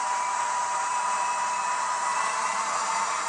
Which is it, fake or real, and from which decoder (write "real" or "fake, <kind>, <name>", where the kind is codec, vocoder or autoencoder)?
fake, vocoder, BigVGAN v2